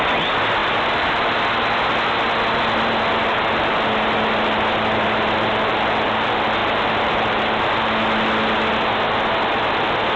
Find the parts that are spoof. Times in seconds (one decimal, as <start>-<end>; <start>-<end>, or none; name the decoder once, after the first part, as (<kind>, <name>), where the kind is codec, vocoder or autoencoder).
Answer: none